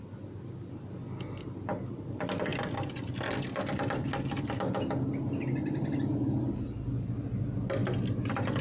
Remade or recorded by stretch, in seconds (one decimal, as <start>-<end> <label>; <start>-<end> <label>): 0.0-2.5 recorded; 2.5-3.9 remade; 3.9-8.6 recorded